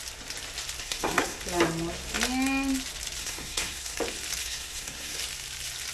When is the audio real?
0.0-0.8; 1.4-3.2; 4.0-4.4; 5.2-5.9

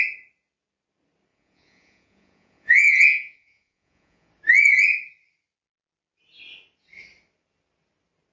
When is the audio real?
0.0-1.3; 4.3-8.3